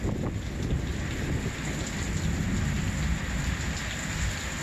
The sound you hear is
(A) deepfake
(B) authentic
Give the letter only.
B